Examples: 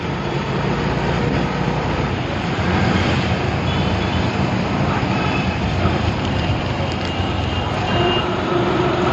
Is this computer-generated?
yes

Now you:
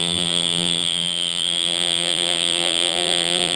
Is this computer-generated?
yes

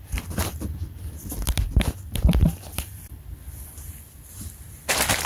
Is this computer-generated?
yes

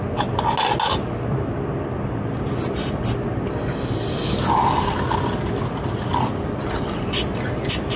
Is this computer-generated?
no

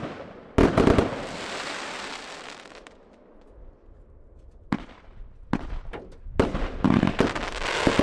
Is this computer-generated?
no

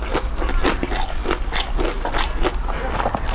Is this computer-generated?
no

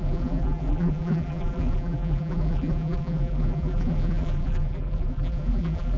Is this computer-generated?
yes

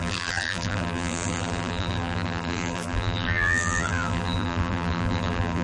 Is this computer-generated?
yes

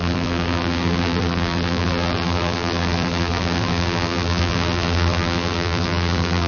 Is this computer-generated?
yes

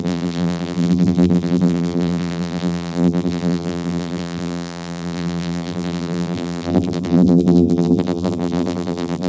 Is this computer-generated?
yes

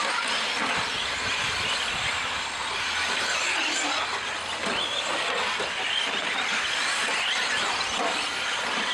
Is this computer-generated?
no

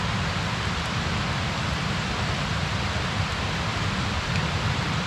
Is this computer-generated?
no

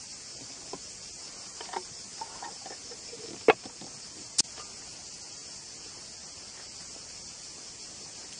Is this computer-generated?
no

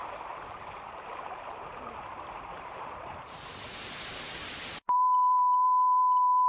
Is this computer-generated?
yes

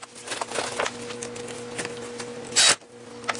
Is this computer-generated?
no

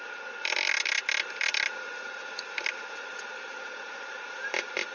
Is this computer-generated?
yes